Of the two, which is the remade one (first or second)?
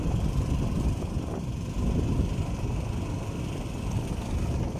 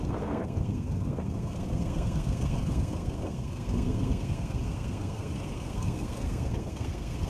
second